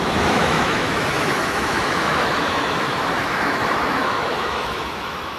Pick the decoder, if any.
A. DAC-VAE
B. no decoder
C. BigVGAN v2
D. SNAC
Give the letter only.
A